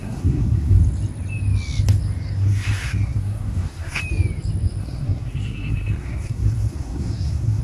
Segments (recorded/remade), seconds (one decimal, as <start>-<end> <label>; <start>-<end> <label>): 0.0-0.8 remade; 0.8-2.4 recorded; 2.4-4.0 remade; 4.0-4.8 recorded; 4.8-7.6 remade